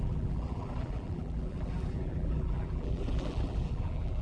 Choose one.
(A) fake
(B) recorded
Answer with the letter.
A